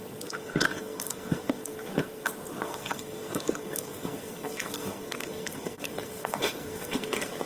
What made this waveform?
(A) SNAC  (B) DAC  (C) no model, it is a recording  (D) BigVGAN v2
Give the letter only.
A